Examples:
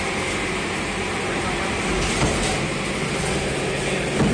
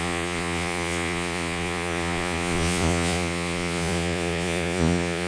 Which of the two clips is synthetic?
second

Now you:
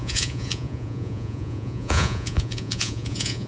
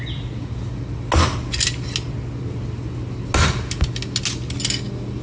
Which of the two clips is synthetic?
first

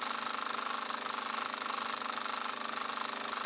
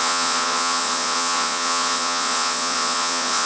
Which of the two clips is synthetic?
second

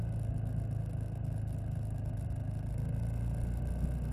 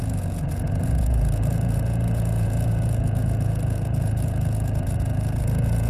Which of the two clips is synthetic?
second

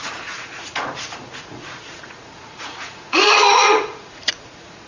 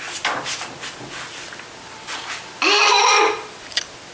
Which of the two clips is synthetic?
first